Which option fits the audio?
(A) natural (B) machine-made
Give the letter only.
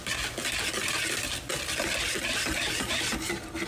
A